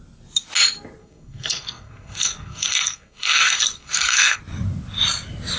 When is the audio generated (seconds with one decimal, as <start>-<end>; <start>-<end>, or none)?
1.0-4.4

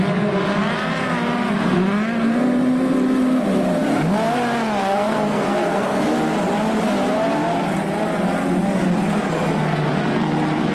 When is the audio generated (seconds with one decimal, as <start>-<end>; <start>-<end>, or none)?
4.8-6.0

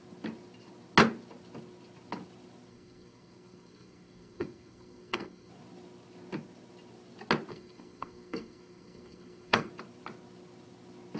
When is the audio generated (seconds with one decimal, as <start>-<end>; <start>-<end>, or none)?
2.7-5.5; 7.5-9.7